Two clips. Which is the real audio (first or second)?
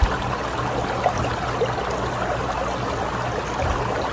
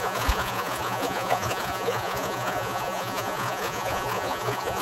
first